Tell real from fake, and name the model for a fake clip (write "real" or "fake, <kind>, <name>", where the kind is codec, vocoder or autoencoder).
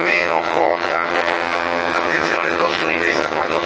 fake, vocoder, HiFi-GAN